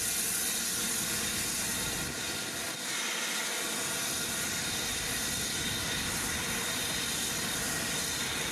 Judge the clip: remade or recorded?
recorded